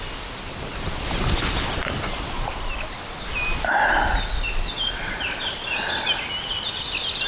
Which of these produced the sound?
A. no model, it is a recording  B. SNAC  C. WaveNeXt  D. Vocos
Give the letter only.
A